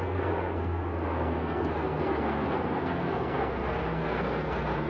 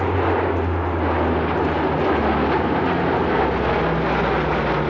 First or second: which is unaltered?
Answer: second